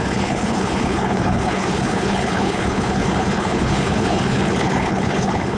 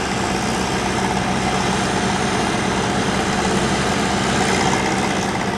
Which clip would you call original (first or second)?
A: second